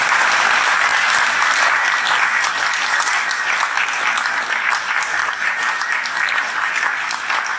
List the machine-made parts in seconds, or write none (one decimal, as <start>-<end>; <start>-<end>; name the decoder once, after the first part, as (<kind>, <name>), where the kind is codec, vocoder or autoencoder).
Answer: 5.2-6.5 (vocoder, BigVGAN v2)

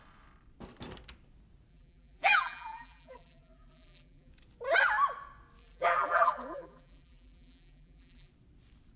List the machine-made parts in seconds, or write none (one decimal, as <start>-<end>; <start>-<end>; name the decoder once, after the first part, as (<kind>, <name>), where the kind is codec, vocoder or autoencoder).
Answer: 1.7-4.3 (vocoder, BigVGAN v2); 5.6-8.3

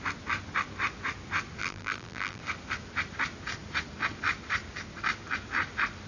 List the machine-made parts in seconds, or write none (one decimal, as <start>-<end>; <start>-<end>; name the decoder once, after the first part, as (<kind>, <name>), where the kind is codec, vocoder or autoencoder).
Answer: 1.6-2.4 (vocoder, BigVGAN v2)

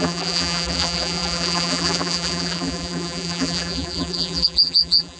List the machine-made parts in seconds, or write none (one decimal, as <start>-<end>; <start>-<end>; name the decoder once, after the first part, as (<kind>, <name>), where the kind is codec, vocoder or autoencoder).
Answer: 0.0-5.2 (vocoder, BigVGAN v2)

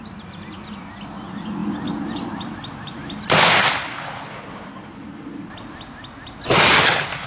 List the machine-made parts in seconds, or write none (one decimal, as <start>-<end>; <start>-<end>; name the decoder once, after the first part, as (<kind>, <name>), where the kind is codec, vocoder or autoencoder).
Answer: 1.6-3.6 (vocoder, BigVGAN v2)

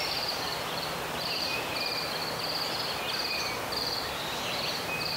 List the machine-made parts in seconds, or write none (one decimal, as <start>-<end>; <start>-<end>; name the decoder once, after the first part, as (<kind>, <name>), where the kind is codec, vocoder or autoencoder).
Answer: 0.0-2.2 (vocoder, BigVGAN v2); 3.8-5.2

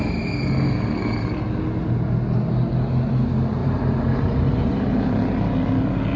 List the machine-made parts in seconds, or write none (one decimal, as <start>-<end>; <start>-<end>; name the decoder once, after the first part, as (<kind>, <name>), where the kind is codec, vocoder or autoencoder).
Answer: 3.6-4.8 (vocoder, BigVGAN v2)